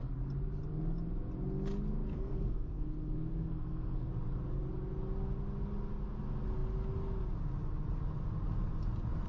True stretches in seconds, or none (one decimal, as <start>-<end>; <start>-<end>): 0.0-2.1; 4.1-9.3